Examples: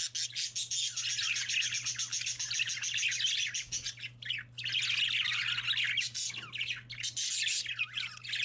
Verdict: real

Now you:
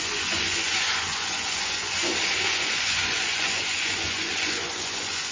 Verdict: fake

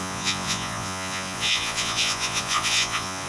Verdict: fake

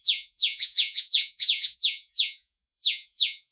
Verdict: fake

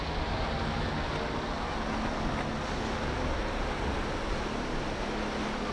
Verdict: real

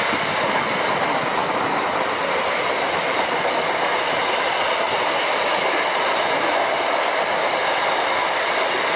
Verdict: real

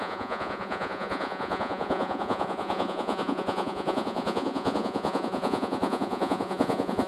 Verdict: fake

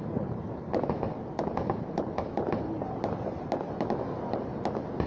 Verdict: real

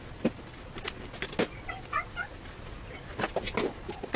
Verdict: real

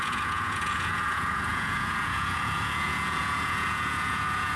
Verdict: fake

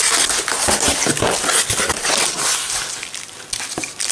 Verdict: real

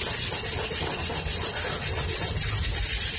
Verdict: real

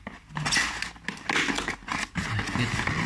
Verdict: real